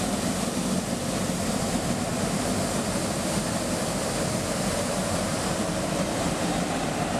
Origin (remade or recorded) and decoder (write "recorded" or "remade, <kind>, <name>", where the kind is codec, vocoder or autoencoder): remade, vocoder, BigVGAN v2